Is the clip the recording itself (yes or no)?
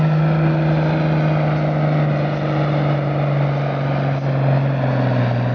yes